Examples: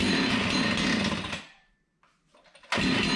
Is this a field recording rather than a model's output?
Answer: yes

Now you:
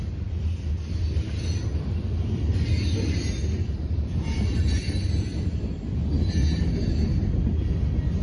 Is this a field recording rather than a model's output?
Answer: yes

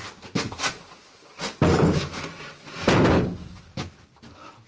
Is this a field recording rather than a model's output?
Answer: yes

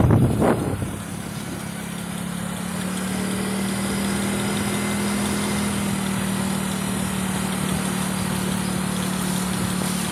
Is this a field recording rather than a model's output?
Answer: yes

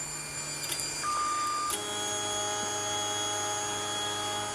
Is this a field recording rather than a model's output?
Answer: yes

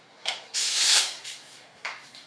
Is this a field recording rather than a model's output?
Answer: no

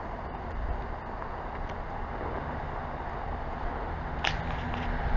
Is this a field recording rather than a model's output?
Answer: yes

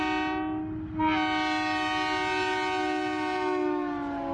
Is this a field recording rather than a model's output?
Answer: yes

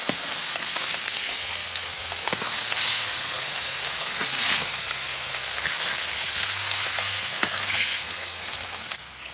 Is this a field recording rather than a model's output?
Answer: no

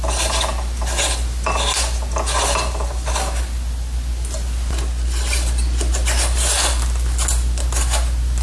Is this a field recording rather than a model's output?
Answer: yes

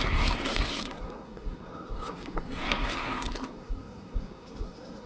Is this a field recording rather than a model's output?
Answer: no